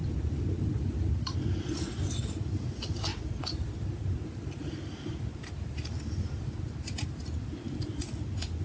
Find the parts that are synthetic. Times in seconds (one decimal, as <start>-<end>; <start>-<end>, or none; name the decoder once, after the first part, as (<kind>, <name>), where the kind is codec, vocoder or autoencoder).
none